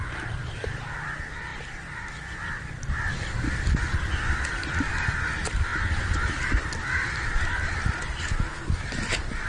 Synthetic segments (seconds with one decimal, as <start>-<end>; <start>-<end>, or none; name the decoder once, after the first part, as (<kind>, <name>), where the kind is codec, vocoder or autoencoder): 1.5-2.7 (vocoder, BigVGAN v2); 5.7-9.5